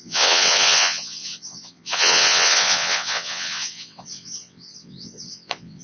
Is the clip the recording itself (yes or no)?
no